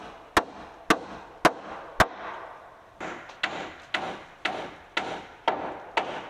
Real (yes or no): yes